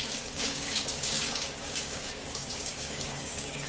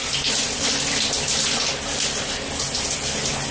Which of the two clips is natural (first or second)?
second